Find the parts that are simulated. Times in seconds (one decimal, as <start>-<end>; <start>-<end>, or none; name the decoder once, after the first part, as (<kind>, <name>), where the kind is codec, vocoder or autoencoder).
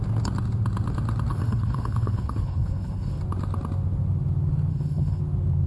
1.3-3.2 (codec, HILCodec); 4.7-5.2